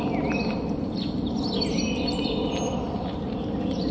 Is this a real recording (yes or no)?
yes